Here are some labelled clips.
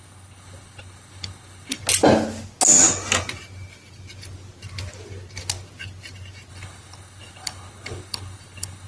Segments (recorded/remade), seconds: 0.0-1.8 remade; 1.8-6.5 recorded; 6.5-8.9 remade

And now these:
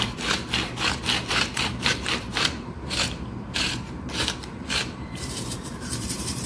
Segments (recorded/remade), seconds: 0.0-0.4 remade; 0.4-1.3 recorded; 1.3-6.5 remade

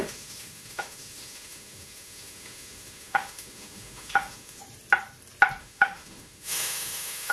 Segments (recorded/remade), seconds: 0.0-4.6 remade; 4.6-5.6 recorded; 5.6-7.3 remade

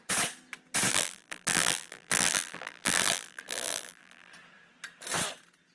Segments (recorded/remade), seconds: 0.0-0.9 recorded; 0.9-4.3 remade; 4.3-5.7 recorded

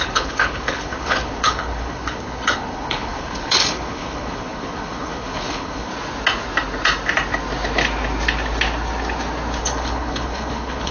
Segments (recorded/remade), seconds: 0.0-5.9 remade; 5.9-9.6 recorded; 9.6-10.9 remade

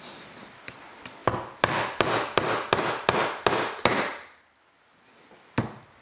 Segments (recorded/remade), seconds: 0.0-6.0 recorded

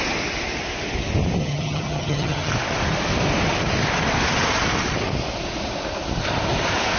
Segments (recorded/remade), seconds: 0.0-1.4 recorded; 1.4-2.5 remade; 2.5-7.0 recorded